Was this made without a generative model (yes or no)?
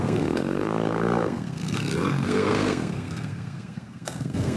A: no